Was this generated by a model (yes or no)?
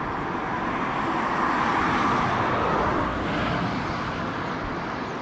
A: no